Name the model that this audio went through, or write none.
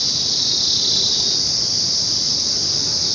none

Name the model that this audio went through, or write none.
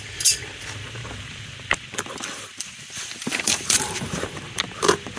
vocoder, BigVGAN v2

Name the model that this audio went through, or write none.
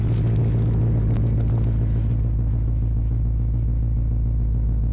none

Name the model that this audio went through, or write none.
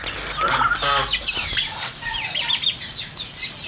none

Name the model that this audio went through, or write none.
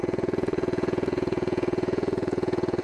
vocoder, Vocos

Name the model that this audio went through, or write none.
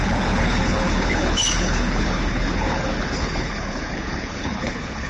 codec, HILCodec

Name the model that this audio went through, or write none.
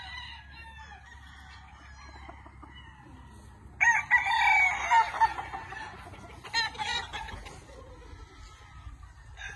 none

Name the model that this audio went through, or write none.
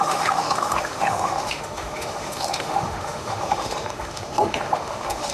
autoencoder, DAC-VAE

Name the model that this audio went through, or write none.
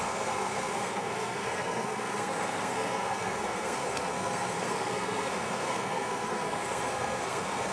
codec, SNAC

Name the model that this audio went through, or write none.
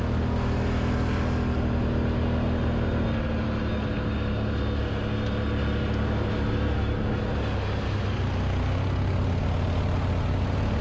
none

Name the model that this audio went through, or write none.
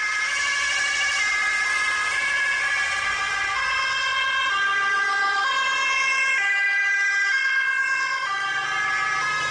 none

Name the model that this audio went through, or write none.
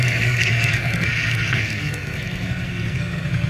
codec, SNAC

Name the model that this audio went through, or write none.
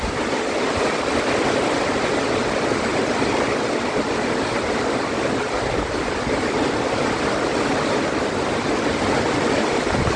none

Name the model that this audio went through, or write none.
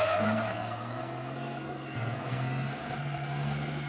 codec, SNAC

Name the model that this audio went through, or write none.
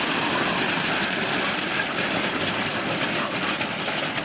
vocoder, BigVGAN v2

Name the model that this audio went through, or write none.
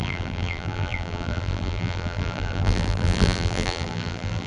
vocoder, BigVGAN v2